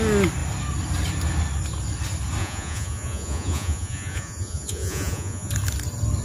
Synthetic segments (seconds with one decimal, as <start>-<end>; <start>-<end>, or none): 2.4-5.5